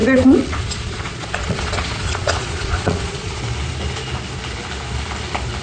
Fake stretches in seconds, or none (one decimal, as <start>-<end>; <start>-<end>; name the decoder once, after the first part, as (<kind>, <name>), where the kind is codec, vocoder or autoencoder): 0.0-3.4 (vocoder, Vocos)